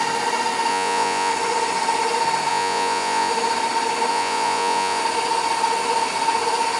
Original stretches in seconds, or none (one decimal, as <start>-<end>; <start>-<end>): 0.0-0.7; 1.3-2.5; 3.3-4.1; 5.0-6.8

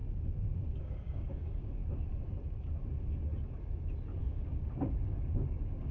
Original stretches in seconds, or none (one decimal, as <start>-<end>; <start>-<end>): 0.0-0.8; 1.8-4.2

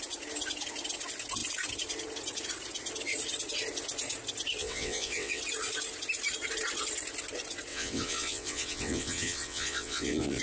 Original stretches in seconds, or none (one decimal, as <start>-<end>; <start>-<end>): 0.0-4.6; 5.4-7.7

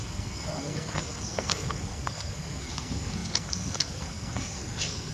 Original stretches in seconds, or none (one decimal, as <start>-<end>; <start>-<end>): none

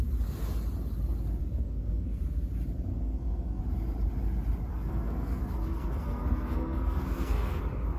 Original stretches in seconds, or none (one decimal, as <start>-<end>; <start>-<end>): 0.0-1.4; 2.2-2.9; 3.6-4.7; 7.6-8.0

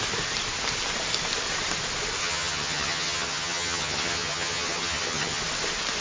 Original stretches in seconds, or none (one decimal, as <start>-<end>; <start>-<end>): 0.0-2.2; 5.4-6.0

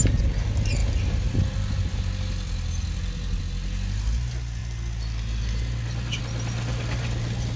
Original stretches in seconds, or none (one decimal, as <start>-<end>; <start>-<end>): 0.0-7.6

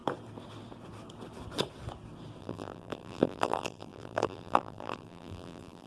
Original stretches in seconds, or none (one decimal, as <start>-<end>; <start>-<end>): 0.0-2.4